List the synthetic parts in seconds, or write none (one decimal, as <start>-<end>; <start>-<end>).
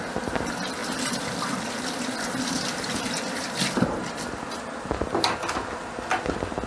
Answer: none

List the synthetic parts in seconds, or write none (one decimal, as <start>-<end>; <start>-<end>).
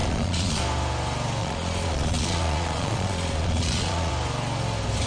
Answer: 0.0-0.6; 1.4-4.1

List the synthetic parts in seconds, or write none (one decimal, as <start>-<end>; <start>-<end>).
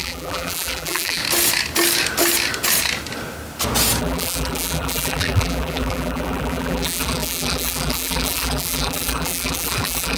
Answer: 0.0-1.2; 4.0-10.2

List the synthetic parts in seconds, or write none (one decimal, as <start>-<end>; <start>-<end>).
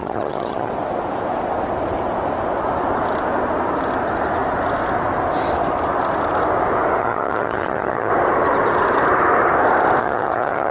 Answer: 0.0-0.7; 7.0-8.1; 10.0-10.7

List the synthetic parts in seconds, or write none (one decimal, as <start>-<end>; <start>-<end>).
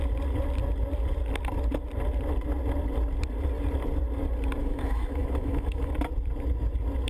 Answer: 4.6-5.9